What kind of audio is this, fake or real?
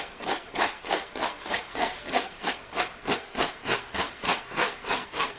fake